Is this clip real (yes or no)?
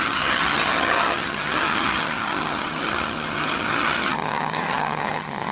no